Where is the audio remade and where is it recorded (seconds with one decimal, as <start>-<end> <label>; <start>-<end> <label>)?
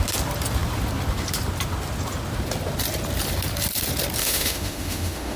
0.0-4.2 recorded; 4.2-5.4 remade